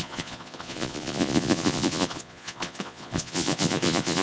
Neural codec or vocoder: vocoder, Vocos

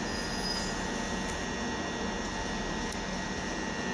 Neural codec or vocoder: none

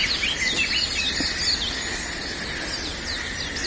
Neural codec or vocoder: none